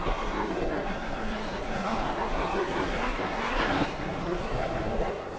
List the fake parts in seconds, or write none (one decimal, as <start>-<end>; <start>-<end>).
0.0-5.4